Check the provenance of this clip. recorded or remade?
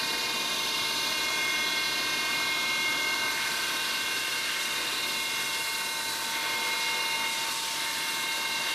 recorded